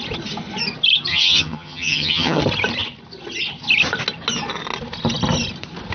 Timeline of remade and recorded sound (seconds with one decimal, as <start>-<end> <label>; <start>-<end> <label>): 0.0-1.1 recorded; 1.1-2.4 remade; 2.4-5.9 recorded